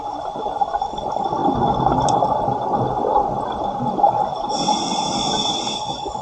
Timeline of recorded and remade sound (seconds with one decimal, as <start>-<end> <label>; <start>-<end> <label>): 0.0-6.2 recorded